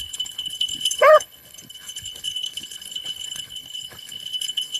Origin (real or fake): fake